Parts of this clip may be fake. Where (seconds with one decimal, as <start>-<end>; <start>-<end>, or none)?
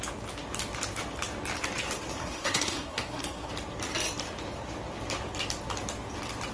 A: 2.2-3.5